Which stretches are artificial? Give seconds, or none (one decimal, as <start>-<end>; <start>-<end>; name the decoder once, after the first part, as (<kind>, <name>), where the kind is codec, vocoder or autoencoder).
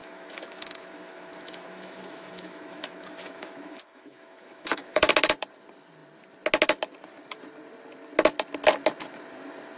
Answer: 0.0-5.1 (autoencoder, DAC-VAE)